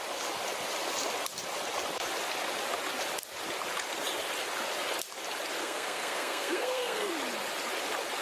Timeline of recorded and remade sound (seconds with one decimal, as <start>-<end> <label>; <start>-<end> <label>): 0.0-5.6 recorded; 5.6-7.1 remade; 7.1-8.2 recorded